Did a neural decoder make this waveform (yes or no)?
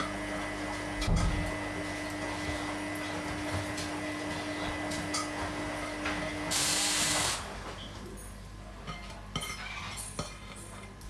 no